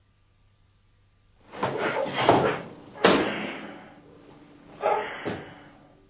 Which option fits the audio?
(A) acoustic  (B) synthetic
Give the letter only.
A